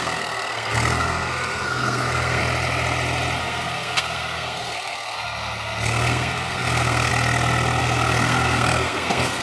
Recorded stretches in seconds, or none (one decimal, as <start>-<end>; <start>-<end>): 2.4-3.4; 7.1-7.8